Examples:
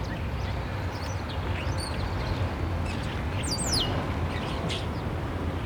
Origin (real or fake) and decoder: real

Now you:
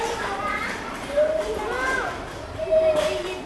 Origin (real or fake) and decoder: real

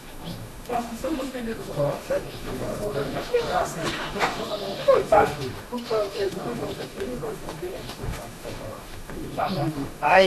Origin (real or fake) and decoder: fake, autoencoder, DAC-VAE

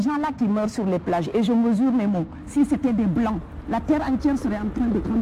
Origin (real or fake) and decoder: real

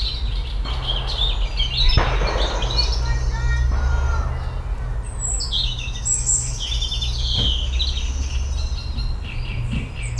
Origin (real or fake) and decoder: real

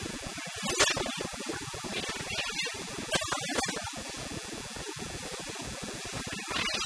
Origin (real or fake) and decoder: real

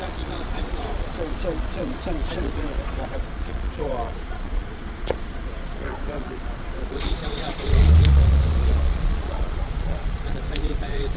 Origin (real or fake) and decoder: fake, vocoder, Vocos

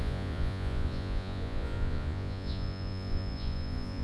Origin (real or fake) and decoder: fake, vocoder, Vocos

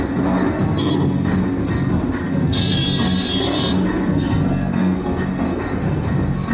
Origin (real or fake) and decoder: fake, codec, SNAC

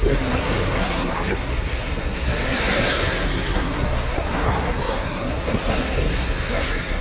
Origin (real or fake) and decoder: fake, codec, SNAC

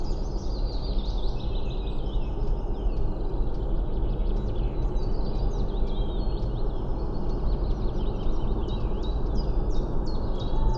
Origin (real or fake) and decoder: real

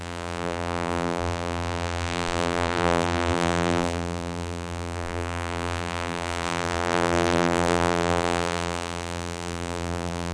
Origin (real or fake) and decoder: fake, vocoder, BigVGAN v2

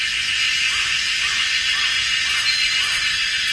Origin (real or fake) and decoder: fake, vocoder, Vocos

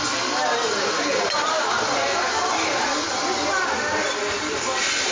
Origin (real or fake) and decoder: fake, vocoder, BigVGAN v2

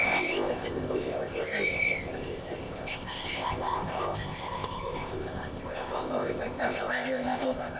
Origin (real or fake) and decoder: fake, codec, ZipCodec